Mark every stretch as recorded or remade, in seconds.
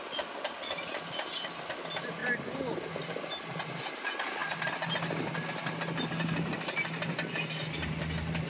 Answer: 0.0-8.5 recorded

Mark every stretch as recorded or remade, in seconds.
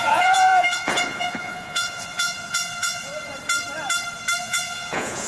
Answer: 0.0-3.1 remade; 3.1-4.4 recorded; 4.4-5.3 remade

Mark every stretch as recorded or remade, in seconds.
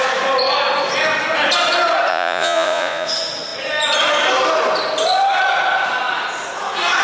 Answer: 0.0-2.1 recorded; 2.1-3.1 remade; 3.1-7.0 recorded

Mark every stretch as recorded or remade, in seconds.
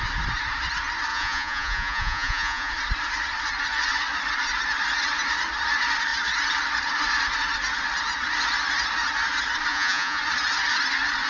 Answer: 0.0-1.1 recorded; 1.1-2.7 remade; 2.7-9.7 recorded; 9.7-10.2 remade; 10.2-11.3 recorded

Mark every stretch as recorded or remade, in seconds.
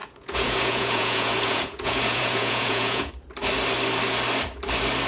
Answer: 0.0-3.1 remade; 3.1-5.1 recorded